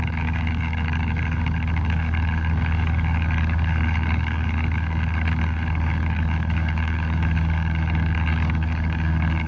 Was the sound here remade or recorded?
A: remade